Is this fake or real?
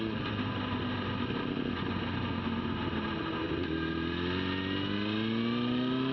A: real